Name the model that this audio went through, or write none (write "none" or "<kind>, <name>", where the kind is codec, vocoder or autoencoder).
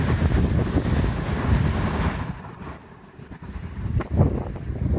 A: none